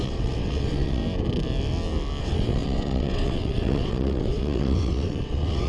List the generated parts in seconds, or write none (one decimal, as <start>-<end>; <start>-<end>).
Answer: 0.0-1.0; 2.2-5.7